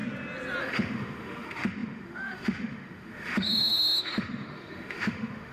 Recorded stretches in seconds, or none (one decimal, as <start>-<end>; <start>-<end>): 0.0-0.6